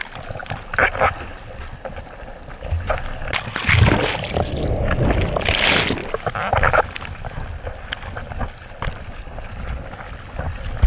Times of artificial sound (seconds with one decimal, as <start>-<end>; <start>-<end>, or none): none